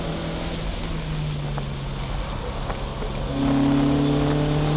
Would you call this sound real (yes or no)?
yes